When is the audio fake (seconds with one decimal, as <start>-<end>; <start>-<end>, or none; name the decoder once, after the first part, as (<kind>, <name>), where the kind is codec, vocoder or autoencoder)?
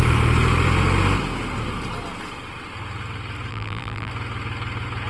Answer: 3.5-4.1 (vocoder, BigVGAN v2)